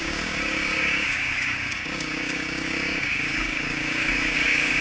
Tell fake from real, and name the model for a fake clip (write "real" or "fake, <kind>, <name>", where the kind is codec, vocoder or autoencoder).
fake, codec, DAC